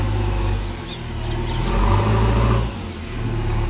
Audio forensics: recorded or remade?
recorded